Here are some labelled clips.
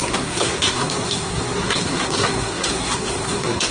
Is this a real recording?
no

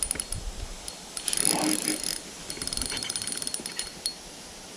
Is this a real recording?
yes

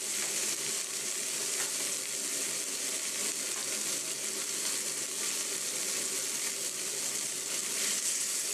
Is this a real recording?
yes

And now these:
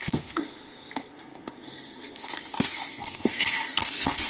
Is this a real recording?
no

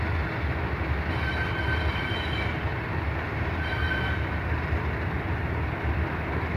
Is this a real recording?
yes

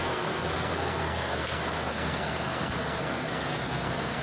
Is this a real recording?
no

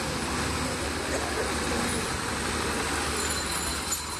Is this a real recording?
yes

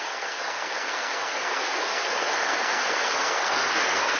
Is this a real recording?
no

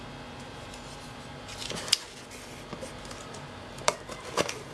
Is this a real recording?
yes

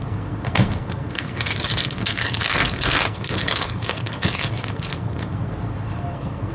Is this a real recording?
no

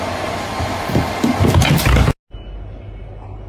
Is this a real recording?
yes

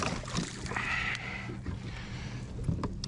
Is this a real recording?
yes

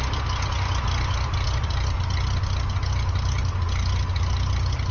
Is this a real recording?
yes